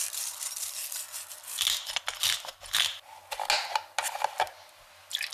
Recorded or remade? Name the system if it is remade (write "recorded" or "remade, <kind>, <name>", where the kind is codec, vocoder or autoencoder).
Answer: recorded